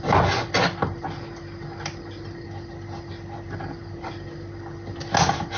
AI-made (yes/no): no